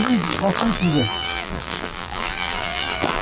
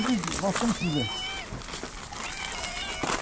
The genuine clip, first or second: second